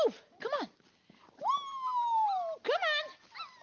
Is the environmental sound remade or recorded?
recorded